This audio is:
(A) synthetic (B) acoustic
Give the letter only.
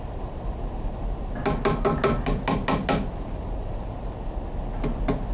B